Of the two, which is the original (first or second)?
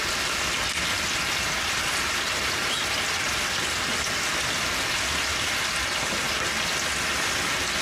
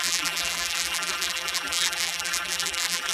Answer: first